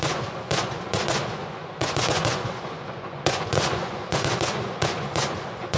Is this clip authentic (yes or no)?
no